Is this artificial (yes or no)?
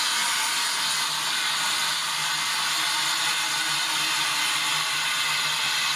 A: no